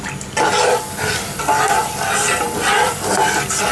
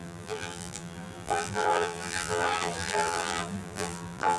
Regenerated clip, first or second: second